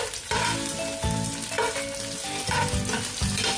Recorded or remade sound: recorded